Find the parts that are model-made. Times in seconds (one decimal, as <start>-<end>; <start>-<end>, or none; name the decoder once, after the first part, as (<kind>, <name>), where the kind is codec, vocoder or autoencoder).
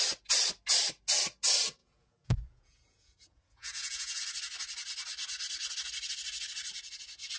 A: 1.8-4.2 (vocoder, Vocos)